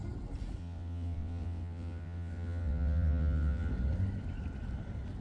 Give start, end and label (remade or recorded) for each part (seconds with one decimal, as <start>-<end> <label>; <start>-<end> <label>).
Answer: 0.0-0.6 recorded; 0.6-3.7 remade; 3.7-5.2 recorded